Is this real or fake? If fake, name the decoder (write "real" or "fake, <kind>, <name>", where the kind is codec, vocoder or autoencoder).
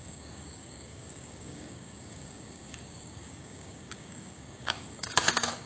fake, codec, DAC